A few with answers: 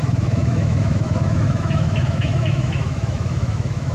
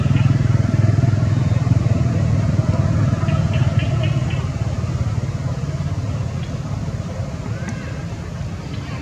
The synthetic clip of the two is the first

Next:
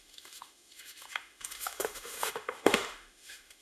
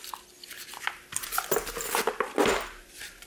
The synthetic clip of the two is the first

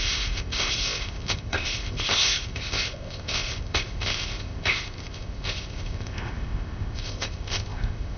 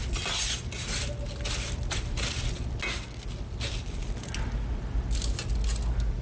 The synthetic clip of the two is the first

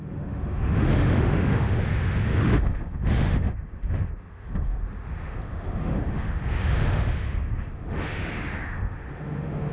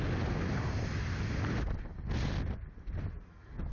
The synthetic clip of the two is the first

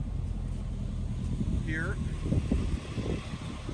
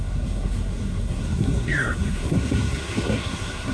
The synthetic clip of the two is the second